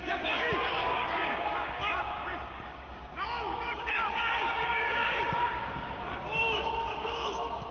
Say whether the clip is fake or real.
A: fake